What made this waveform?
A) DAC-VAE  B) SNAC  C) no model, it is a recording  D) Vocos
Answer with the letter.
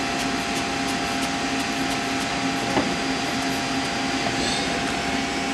C